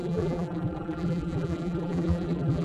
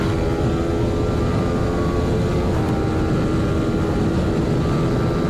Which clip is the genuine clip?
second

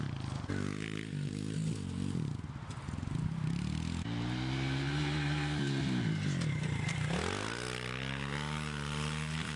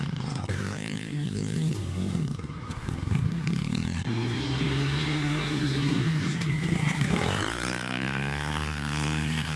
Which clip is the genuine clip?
first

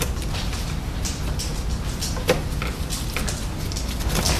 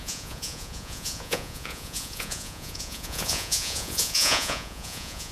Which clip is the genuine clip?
first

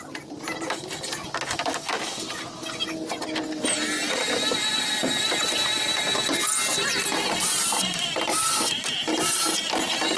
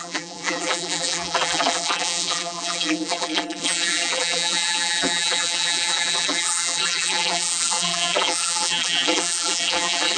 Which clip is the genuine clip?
first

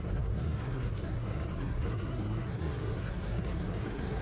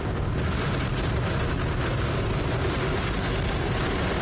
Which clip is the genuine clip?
second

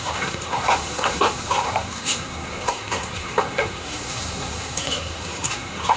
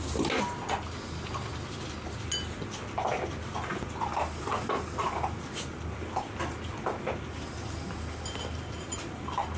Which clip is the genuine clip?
second